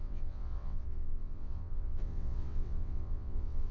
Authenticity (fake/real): fake